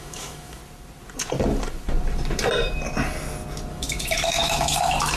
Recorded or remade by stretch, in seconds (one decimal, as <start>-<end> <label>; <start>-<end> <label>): 0.0-0.6 remade; 0.6-3.7 recorded; 3.7-5.2 remade